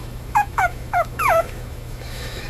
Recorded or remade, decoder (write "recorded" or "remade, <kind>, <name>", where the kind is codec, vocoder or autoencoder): remade, autoencoder, DAC-VAE